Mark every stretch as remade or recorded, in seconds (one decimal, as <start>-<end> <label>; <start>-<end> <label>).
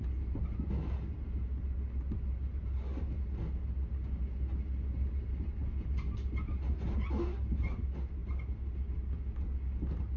0.0-10.2 recorded